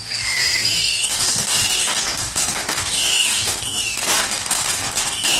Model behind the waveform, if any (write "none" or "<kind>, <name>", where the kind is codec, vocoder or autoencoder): codec, DAC